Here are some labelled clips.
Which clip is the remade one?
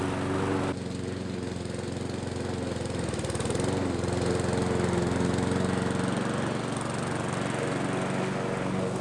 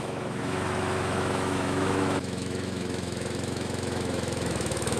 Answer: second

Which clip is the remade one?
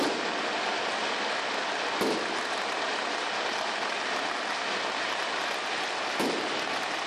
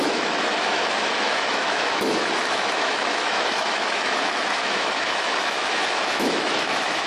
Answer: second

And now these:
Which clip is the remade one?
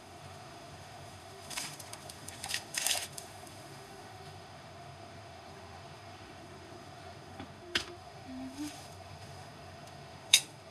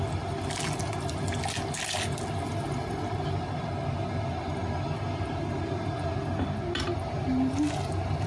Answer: first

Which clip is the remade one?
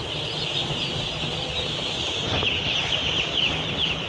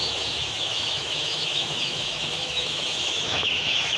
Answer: second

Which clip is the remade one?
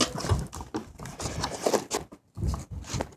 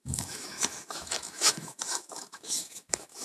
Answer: second